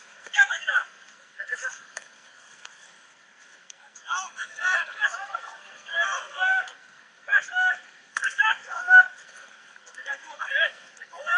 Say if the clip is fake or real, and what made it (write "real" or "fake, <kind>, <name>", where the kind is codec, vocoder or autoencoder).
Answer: fake, codec, SNAC